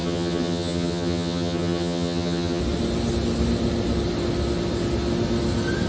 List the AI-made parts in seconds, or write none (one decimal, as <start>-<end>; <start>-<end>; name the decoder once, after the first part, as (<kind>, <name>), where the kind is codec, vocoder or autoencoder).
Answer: 0.0-2.6 (vocoder, HiFi-GAN)

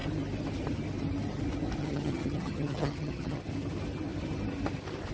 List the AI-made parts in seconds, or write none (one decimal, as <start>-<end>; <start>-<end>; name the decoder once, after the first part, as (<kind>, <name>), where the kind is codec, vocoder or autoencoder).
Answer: 1.8-3.4 (vocoder, HiFi-GAN)

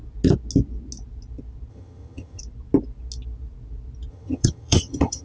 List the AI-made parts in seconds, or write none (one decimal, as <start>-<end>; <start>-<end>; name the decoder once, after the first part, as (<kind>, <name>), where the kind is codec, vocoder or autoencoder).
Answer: 1.7-2.4 (vocoder, HiFi-GAN); 4.1-5.2